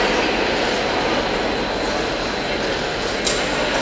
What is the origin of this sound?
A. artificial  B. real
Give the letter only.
B